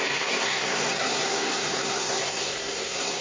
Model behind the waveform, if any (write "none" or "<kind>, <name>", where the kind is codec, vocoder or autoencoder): codec, SNAC